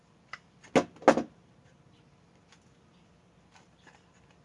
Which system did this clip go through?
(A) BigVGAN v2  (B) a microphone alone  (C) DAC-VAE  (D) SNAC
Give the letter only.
B